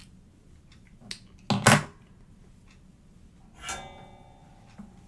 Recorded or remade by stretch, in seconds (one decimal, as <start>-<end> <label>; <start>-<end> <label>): 0.0-5.1 recorded